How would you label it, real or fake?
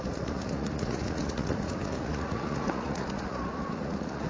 fake